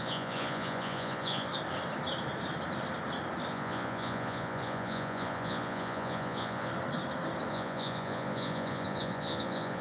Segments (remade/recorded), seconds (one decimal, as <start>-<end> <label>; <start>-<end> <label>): 0.0-1.5 remade; 1.5-3.5 recorded; 3.5-6.7 remade; 6.7-7.5 recorded; 7.5-9.8 remade

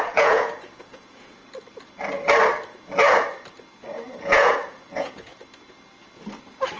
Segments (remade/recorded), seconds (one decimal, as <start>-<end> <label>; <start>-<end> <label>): 0.0-1.4 remade; 1.4-4.2 recorded; 4.2-5.3 remade; 5.3-6.8 recorded

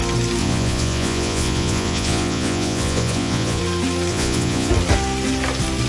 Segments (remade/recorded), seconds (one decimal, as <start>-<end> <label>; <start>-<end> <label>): 0.0-0.4 recorded; 0.4-3.6 remade; 3.6-4.1 recorded; 4.1-4.7 remade; 4.7-5.9 recorded

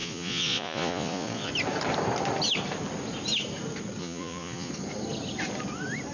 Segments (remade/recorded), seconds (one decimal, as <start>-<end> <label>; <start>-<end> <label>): 0.0-1.5 remade; 1.5-4.0 recorded; 4.0-4.7 remade; 4.7-6.1 recorded

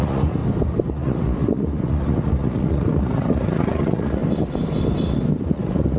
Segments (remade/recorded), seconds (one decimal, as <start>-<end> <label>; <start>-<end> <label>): 0.0-0.4 remade; 0.4-0.9 recorded; 0.9-4.2 remade; 4.2-5.5 recorded; 5.5-6.0 remade

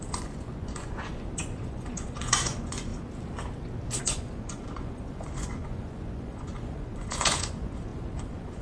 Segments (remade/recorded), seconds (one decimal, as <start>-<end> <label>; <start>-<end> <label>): 0.0-2.9 remade; 2.9-4.0 recorded; 4.0-8.6 remade